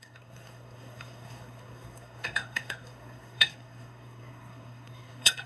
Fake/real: fake